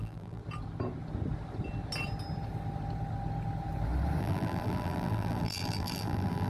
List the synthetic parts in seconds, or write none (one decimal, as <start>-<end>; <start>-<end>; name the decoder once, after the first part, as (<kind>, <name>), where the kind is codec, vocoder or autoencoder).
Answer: 0.0-0.4 (vocoder, BigVGAN v2); 4.2-6.5